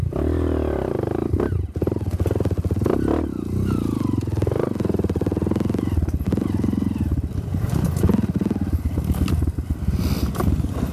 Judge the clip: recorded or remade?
recorded